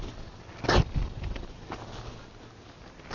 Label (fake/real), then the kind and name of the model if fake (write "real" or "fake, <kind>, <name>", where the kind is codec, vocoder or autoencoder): real